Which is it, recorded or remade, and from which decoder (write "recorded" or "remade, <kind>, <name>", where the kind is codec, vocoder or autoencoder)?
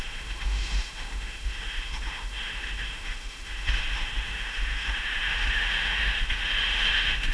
remade, autoencoder, DAC-VAE